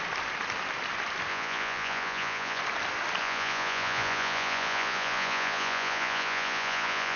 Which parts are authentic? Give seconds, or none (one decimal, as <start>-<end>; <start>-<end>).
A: 0.0-1.3; 2.6-3.2